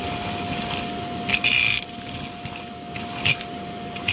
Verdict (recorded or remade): recorded